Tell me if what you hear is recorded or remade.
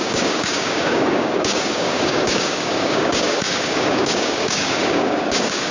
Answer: remade